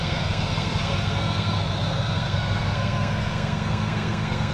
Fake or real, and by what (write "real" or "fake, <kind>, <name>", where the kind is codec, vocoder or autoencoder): fake, codec, SNAC